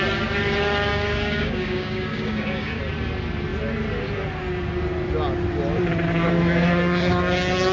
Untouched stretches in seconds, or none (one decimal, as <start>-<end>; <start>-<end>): 0.0-0.9; 2.8-7.7